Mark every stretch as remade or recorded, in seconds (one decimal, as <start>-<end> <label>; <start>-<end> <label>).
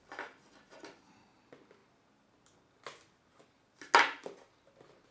0.0-5.1 recorded